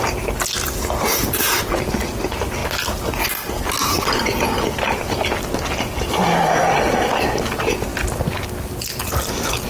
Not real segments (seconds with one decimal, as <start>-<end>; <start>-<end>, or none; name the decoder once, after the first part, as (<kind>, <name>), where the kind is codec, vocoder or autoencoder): none